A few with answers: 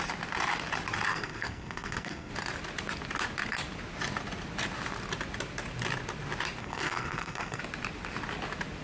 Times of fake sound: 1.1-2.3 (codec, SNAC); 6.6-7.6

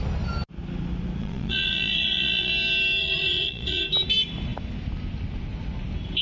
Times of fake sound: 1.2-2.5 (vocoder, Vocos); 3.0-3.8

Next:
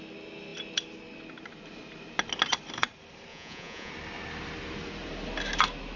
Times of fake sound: 3.3-3.9 (vocoder, Vocos)